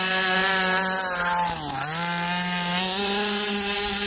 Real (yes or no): yes